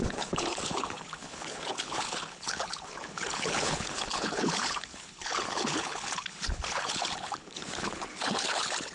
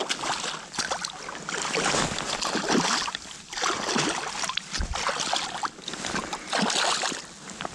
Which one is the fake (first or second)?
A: first